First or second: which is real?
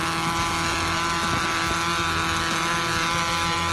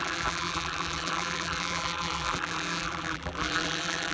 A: first